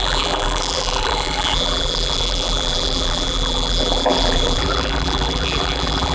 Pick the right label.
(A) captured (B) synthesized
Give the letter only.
B